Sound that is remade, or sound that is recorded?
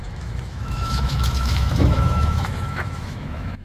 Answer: remade